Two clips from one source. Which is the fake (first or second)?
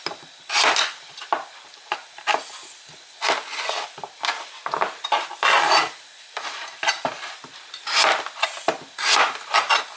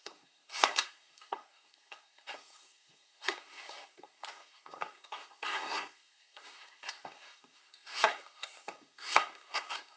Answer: second